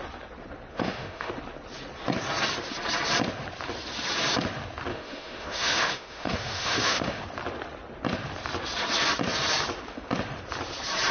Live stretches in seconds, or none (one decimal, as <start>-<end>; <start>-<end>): 0.0-0.7; 1.3-4.9; 7.2-11.1